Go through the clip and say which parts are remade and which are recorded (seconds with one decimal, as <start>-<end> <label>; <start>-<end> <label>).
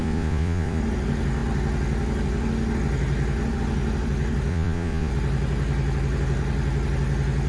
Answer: 0.0-0.8 remade; 0.8-4.5 recorded; 4.5-5.1 remade; 5.1-7.5 recorded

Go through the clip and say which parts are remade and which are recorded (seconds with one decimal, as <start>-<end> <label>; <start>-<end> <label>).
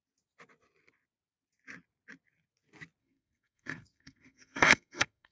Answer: 0.0-3.0 recorded; 3.0-5.3 remade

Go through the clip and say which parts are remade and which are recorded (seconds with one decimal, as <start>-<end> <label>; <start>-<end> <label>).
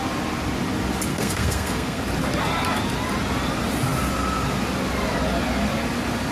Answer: 0.0-1.1 recorded; 1.1-2.0 remade; 2.0-6.3 recorded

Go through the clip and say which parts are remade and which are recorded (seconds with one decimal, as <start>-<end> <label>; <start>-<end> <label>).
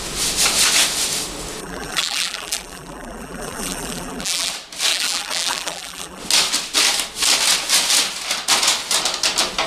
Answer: 0.0-1.6 recorded; 1.6-4.5 remade; 4.5-4.9 recorded; 4.9-6.2 remade; 6.2-9.7 recorded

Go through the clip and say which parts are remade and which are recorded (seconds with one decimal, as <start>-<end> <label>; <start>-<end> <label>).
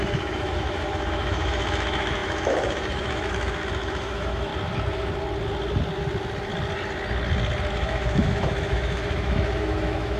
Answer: 0.0-4.5 remade; 4.5-7.7 recorded; 7.7-10.2 remade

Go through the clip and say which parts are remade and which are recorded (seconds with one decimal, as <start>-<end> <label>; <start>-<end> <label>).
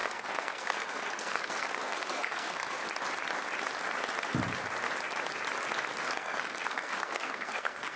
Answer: 0.0-2.8 remade; 2.8-6.0 recorded; 6.0-8.0 remade